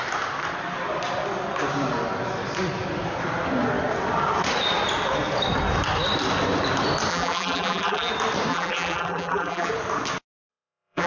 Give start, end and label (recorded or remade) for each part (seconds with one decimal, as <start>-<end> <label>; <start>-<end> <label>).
0.0-7.1 recorded; 7.1-8.1 remade; 8.1-8.5 recorded; 8.5-9.7 remade; 9.7-10.5 recorded; 10.5-11.1 remade